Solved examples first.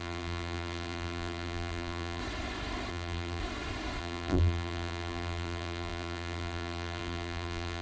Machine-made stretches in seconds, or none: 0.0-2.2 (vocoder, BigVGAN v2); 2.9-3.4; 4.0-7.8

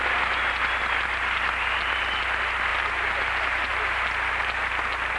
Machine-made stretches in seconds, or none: 2.7-3.7 (vocoder, BigVGAN v2)

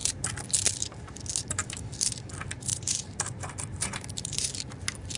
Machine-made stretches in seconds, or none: 2.7-4.7 (vocoder, BigVGAN v2)

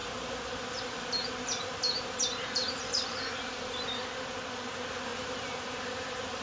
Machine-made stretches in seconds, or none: 0.0-3.8 (vocoder, BigVGAN v2); 5.1-6.4

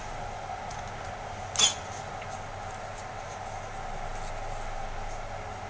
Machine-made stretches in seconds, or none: none

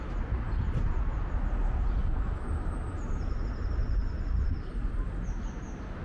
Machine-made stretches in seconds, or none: 2.0-3.1 (vocoder, BigVGAN v2); 4.0-6.0